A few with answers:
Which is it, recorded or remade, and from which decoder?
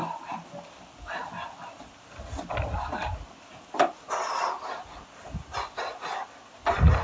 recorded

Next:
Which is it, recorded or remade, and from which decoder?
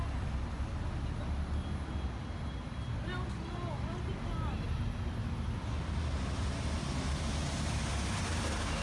recorded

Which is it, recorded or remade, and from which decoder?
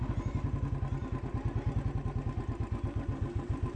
recorded